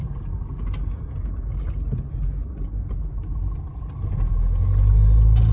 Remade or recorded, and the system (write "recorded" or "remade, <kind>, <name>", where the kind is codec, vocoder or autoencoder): recorded